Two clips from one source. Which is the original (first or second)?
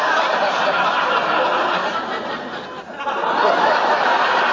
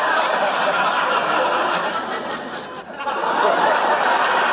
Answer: first